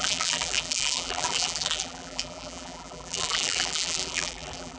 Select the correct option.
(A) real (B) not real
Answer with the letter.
B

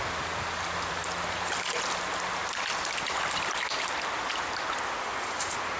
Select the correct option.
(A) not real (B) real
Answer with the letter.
B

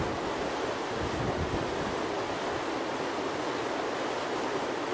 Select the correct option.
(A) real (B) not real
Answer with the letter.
A